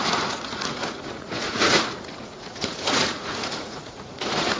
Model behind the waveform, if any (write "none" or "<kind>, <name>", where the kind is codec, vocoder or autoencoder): vocoder, Vocos